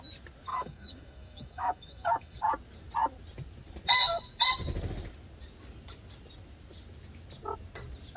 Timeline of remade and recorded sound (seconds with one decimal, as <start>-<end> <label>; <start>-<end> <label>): 0.0-0.5 recorded; 0.5-2.4 remade; 2.4-8.2 recorded

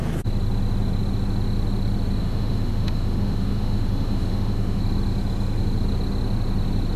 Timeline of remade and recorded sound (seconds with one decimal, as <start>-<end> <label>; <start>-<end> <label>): 0.0-2.2 recorded; 2.2-4.8 remade; 4.8-7.0 recorded

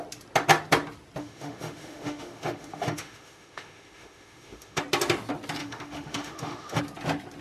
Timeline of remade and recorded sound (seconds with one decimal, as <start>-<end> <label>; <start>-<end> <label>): 0.0-1.2 recorded; 1.2-4.8 remade; 4.8-5.6 recorded; 5.6-6.8 remade; 6.8-7.4 recorded

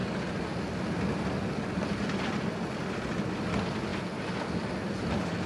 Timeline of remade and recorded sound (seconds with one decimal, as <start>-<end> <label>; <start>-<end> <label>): 0.0-5.5 recorded

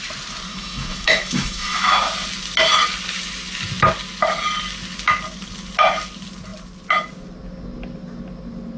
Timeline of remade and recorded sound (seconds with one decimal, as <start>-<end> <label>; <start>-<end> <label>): 0.0-0.5 recorded; 0.5-2.0 remade; 2.0-8.8 recorded

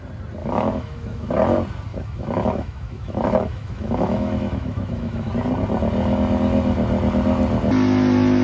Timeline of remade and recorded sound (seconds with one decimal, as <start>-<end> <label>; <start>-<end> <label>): 0.0-0.4 recorded; 0.4-1.3 remade; 1.3-1.9 recorded; 1.9-5.3 remade; 5.3-8.4 recorded

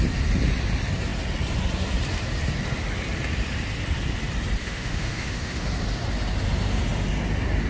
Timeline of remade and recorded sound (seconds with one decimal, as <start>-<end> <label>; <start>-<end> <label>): 0.0-4.6 recorded; 4.6-5.7 remade; 5.7-7.7 recorded

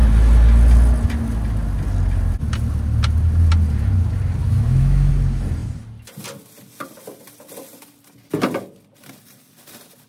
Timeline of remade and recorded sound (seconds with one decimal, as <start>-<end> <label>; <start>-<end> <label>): 0.0-4.4 recorded; 4.4-5.1 remade; 5.1-10.1 recorded